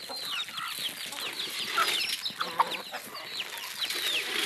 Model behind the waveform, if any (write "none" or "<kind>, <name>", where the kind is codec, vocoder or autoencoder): none